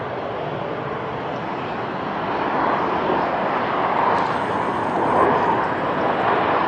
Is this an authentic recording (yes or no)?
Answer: yes